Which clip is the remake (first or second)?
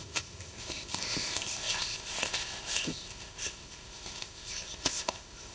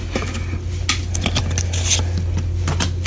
first